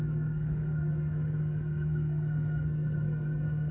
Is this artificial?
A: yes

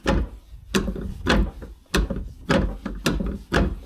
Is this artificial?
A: no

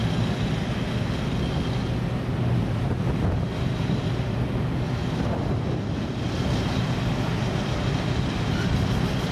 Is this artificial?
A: no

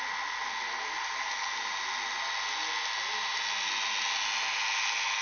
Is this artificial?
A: no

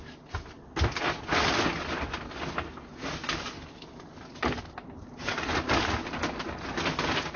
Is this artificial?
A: no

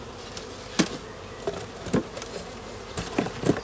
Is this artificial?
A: no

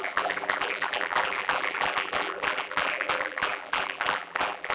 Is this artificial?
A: yes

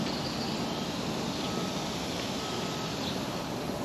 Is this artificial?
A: no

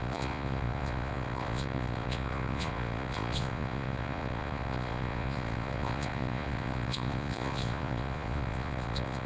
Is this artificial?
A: yes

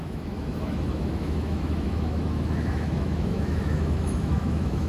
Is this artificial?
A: yes